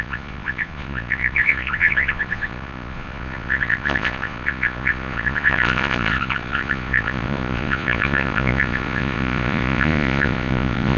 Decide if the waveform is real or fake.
fake